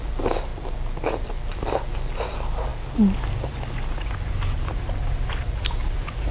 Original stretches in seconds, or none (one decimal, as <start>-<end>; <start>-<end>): 0.0-6.3